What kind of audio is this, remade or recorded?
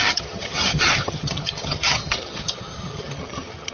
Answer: remade